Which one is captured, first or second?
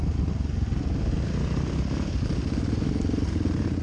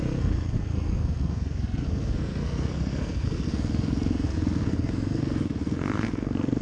first